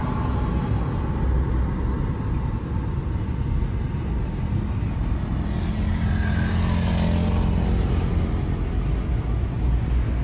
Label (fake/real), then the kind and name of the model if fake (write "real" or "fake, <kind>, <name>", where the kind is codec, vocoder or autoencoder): real